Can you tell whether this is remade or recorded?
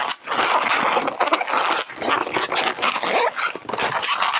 recorded